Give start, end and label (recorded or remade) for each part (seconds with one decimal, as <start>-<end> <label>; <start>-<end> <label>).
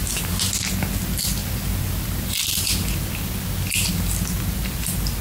0.0-5.2 recorded